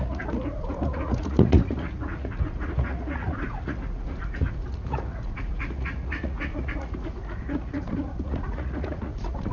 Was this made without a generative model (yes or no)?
no